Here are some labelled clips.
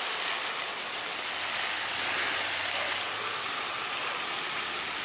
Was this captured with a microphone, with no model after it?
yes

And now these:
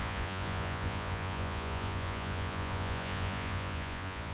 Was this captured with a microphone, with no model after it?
no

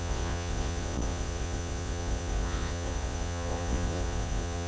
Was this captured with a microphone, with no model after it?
no